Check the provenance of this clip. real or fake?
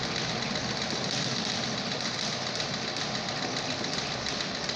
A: real